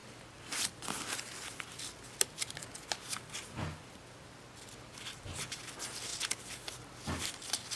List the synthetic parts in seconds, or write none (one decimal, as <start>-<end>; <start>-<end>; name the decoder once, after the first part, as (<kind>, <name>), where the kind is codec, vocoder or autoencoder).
0.0-4.5 (vocoder, BigVGAN v2); 6.1-7.2